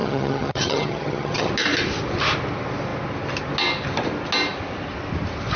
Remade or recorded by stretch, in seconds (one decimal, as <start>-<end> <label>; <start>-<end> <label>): 0.0-1.5 remade; 1.5-5.6 recorded